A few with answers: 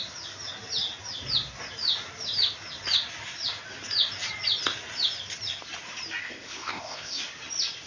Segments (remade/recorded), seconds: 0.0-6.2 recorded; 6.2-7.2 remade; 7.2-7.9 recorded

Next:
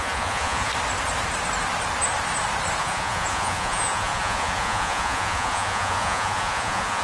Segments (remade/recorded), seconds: 0.0-0.7 remade; 0.7-2.8 recorded; 2.8-7.0 remade

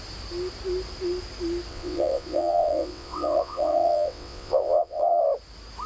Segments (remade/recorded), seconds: 0.0-1.7 recorded; 1.7-5.2 remade; 5.2-5.9 recorded

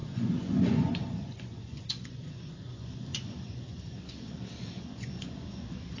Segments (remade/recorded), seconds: 0.0-6.0 remade

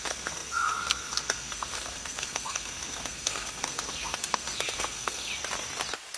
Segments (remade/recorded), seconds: 0.0-5.3 remade; 5.3-6.2 recorded

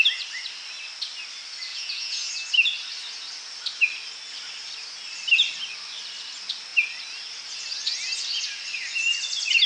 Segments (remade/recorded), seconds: 0.0-1.7 recorded; 1.7-2.3 remade; 2.3-9.7 recorded

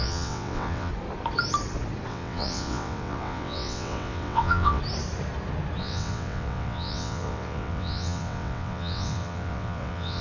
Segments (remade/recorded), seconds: 0.0-0.9 remade; 0.9-2.1 recorded; 2.1-4.8 remade; 4.8-5.8 recorded; 5.8-10.2 remade

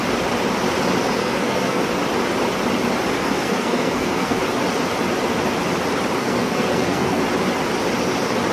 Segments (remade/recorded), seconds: 0.0-1.2 recorded; 1.2-1.8 remade; 1.8-3.2 recorded; 3.2-4.4 remade; 4.4-6.2 recorded; 6.2-7.2 remade; 7.2-8.5 recorded